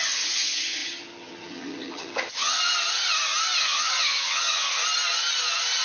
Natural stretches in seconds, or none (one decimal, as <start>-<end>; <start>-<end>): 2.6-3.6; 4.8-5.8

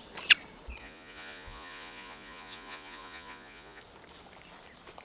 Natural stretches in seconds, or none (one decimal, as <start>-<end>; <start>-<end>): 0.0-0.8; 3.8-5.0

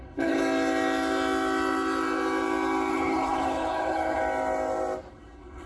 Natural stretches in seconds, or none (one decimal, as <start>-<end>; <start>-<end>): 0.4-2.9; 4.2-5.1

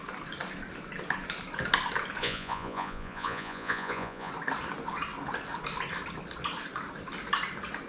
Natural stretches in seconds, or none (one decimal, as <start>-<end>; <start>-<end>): 0.0-2.2; 4.3-7.9

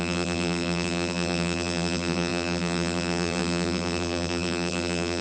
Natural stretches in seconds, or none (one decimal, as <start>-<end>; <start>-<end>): none